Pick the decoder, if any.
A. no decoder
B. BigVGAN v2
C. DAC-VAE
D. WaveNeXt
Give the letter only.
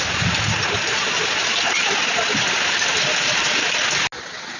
A